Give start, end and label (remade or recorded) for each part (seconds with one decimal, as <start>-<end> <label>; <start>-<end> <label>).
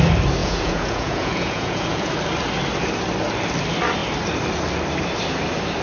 0.0-0.4 recorded; 0.4-2.1 remade; 2.1-5.8 recorded